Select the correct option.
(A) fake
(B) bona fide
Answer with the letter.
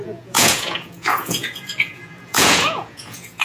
A